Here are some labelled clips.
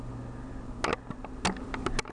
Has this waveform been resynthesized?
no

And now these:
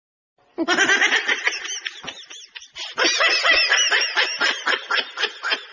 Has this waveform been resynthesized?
no